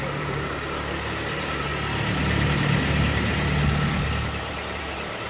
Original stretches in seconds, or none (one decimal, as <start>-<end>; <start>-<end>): 1.7-4.8